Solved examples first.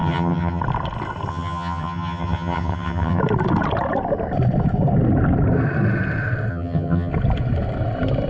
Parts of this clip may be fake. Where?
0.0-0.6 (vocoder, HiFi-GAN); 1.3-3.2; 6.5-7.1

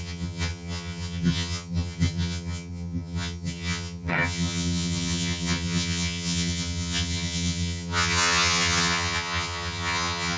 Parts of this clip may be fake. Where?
0.0-10.4 (vocoder, HiFi-GAN)